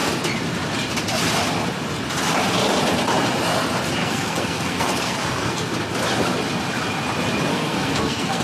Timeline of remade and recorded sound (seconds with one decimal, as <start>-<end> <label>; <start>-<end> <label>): 0.0-4.0 recorded; 4.0-5.7 remade; 5.7-7.5 recorded; 7.5-8.4 remade